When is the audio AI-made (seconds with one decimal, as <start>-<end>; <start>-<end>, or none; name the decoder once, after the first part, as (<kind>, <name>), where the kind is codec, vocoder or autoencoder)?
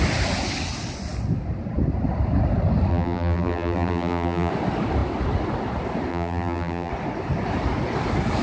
2.9-4.5 (vocoder, BigVGAN v2); 6.1-6.9